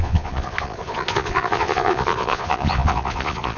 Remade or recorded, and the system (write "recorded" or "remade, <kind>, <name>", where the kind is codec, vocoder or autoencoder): remade, vocoder, Vocos